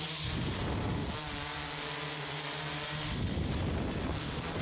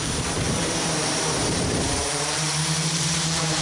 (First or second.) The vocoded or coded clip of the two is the second